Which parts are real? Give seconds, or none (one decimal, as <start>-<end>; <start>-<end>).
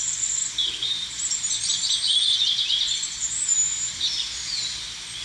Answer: 0.0-0.6; 2.9-5.2